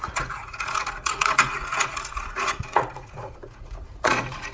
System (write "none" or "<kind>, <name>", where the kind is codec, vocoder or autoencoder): vocoder, Vocos